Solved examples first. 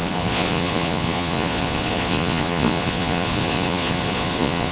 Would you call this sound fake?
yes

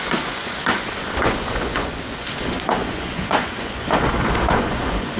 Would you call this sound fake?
yes